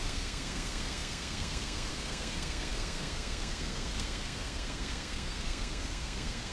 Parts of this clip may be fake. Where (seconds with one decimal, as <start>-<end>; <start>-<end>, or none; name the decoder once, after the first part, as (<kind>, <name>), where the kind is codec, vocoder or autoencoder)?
0.0-6.5 (codec, SNAC)